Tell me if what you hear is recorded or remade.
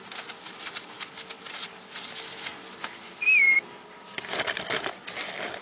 recorded